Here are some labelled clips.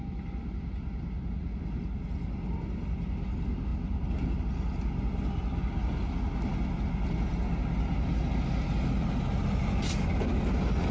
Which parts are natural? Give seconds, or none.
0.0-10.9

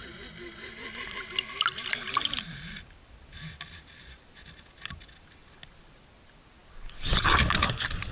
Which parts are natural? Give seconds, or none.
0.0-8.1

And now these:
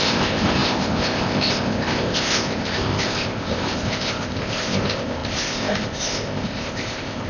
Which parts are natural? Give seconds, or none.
none

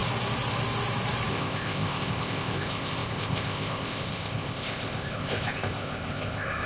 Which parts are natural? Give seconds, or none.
0.0-1.3

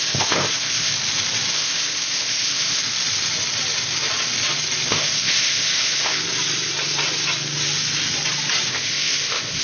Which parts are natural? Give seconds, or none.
0.9-1.5; 2.8-4.9; 6.2-8.7